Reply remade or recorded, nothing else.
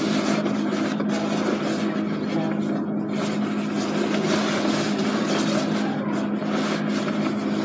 recorded